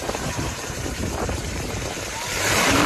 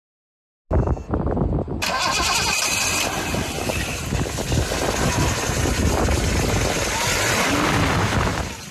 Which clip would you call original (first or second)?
second